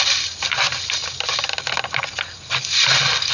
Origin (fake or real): real